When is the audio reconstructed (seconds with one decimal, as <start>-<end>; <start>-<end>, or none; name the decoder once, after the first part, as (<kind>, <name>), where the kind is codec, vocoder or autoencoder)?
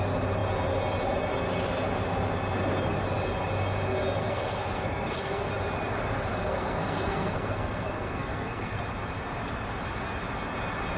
4.2-5.5 (codec, SNAC); 6.4-8.8